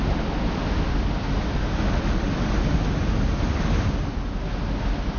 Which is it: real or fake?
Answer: real